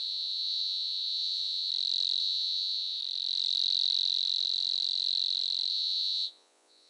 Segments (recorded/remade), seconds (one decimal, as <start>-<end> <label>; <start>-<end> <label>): 0.0-1.7 remade; 1.7-2.2 recorded; 2.2-3.0 remade; 3.0-5.7 recorded; 5.7-6.9 remade